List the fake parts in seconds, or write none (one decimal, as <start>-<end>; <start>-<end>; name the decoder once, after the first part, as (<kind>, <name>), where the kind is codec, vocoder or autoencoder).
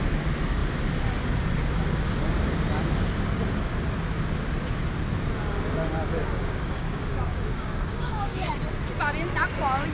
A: 6.2-8.5 (codec, DAC)